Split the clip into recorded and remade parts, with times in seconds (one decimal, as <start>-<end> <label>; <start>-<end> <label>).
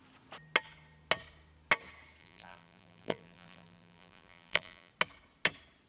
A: 0.0-2.2 recorded; 2.2-4.9 remade; 4.9-5.9 recorded